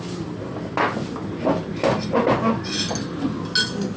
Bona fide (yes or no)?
yes